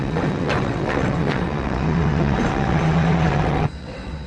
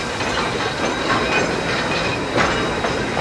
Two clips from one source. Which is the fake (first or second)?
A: first